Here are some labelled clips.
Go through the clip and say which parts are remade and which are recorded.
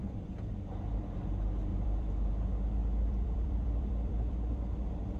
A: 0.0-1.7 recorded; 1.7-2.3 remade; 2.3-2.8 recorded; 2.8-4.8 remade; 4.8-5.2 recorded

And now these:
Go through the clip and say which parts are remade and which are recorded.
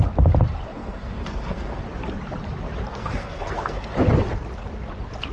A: 0.0-0.7 recorded; 0.7-1.8 remade; 1.8-2.9 recorded; 2.9-3.9 remade; 3.9-5.3 recorded